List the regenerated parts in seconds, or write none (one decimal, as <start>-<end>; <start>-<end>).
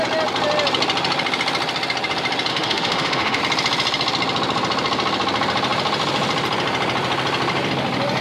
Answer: 2.5-3.4